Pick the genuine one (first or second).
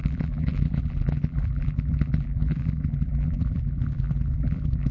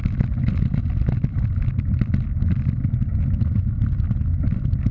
second